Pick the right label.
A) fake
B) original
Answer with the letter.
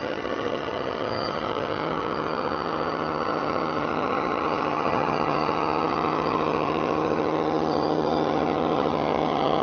A